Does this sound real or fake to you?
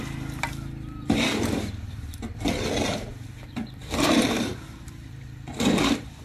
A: fake